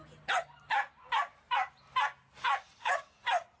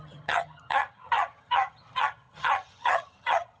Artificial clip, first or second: second